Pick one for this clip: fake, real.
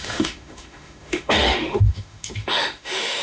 fake